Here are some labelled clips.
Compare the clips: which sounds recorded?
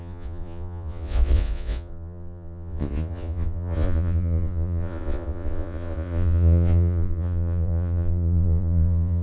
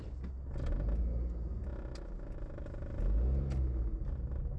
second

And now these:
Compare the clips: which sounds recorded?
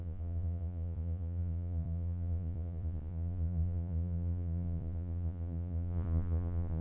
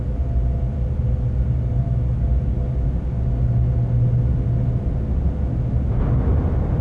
second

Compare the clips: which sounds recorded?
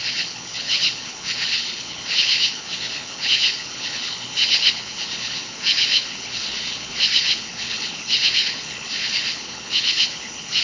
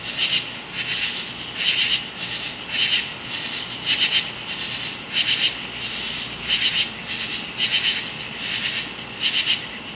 second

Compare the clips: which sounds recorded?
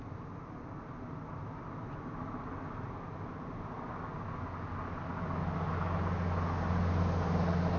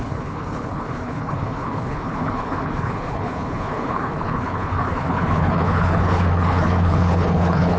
first